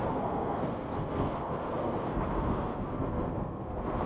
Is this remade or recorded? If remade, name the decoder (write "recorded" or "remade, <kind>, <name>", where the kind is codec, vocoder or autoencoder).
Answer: remade, codec, SNAC